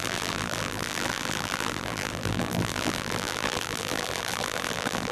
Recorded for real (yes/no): no